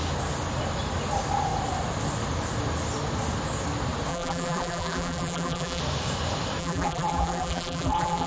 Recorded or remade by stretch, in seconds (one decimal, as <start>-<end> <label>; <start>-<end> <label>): 0.0-4.1 recorded; 4.1-5.8 remade; 5.8-6.6 recorded; 6.6-8.3 remade